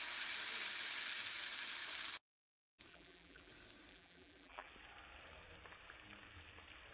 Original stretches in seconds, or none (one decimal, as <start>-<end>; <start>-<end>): 0.0-2.9; 3.5-3.9; 4.7-6.9